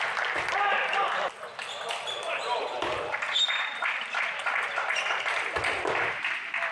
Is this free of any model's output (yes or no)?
no